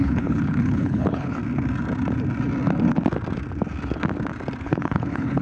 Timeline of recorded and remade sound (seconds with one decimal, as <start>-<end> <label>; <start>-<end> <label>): 0.0-1.4 remade; 1.4-4.6 recorded; 4.6-5.4 remade